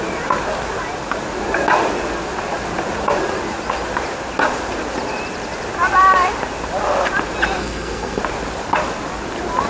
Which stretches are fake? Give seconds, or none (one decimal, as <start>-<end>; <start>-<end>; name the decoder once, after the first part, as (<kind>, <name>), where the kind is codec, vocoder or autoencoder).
7.6-8.2 (codec, SNAC)